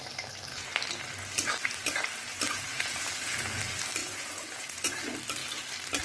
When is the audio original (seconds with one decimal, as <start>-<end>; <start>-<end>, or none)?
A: 0.0-2.7; 3.6-4.0; 4.8-6.0